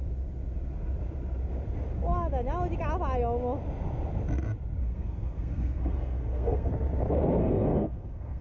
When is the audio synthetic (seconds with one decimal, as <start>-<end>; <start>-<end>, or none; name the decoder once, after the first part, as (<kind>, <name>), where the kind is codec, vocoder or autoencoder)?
4.8-6.7 (codec, SNAC); 7.4-8.4